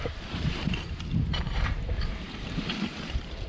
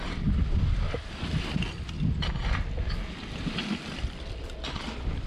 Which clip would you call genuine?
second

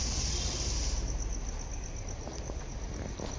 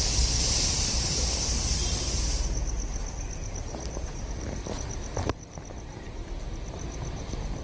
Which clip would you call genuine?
first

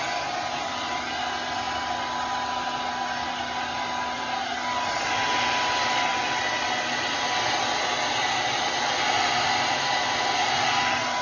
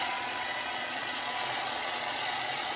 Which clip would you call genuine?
first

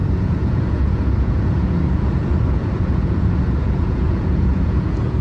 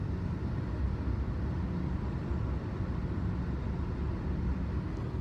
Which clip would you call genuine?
second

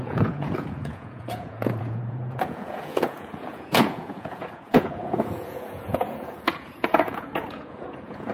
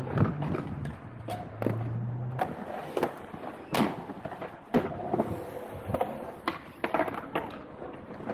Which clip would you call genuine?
second